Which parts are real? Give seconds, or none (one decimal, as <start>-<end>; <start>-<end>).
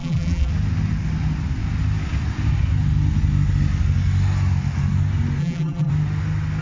0.5-5.4; 5.9-6.6